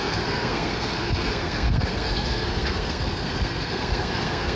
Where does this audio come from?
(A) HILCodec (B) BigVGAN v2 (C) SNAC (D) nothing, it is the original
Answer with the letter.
C